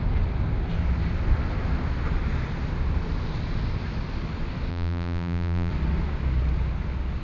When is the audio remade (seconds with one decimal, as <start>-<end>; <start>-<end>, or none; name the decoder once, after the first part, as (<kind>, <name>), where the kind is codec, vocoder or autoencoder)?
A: 4.7-5.7 (vocoder, BigVGAN v2)